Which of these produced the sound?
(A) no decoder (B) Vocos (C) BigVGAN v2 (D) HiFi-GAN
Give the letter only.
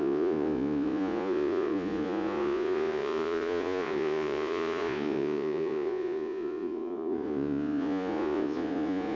B